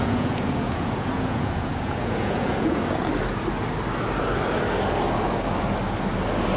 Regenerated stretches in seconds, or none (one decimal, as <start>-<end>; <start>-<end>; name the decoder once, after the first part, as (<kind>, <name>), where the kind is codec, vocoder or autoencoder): 0.0-3.1 (vocoder, Vocos)